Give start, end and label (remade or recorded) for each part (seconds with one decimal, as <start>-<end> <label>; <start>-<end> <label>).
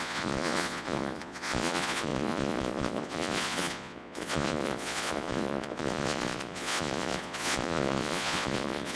0.0-9.0 remade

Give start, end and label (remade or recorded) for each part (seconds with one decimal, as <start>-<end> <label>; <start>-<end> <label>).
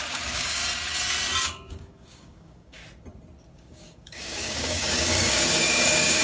0.0-0.6 remade; 0.6-1.4 recorded; 1.4-2.8 remade; 2.8-3.5 recorded; 3.5-6.2 remade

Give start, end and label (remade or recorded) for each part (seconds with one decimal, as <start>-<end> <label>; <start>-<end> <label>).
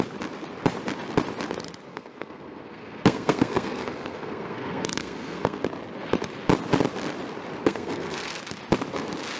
0.0-1.9 recorded; 1.9-5.6 remade; 5.6-7.6 recorded; 7.6-8.4 remade; 8.4-9.4 recorded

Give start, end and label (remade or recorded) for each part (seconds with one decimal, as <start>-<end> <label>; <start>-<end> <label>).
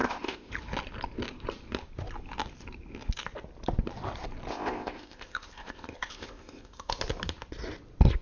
0.0-0.5 remade; 0.5-4.5 recorded; 4.5-6.9 remade; 6.9-8.2 recorded